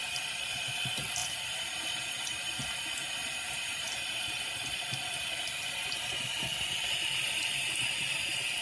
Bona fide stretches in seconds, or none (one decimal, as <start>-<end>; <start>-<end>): 0.0-1.2; 1.8-3.7; 4.4-8.6